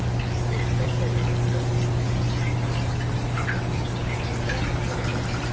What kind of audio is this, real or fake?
real